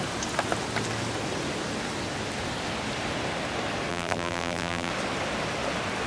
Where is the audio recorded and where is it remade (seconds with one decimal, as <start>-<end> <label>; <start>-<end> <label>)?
0.0-3.9 recorded; 3.9-4.9 remade; 4.9-6.1 recorded